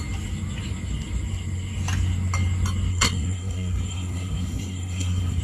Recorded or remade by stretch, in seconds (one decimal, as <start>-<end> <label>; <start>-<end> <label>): 0.0-2.9 recorded; 2.9-5.4 remade